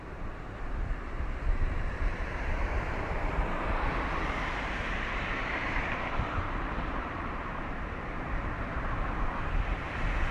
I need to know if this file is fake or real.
fake